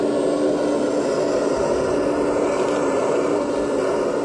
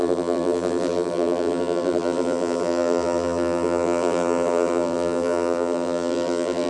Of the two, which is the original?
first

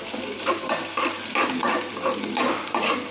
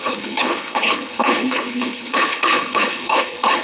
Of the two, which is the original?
first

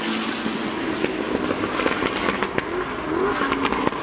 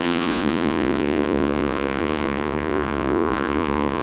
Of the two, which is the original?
first